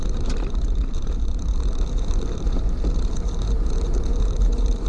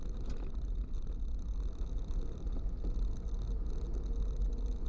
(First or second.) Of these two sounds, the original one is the second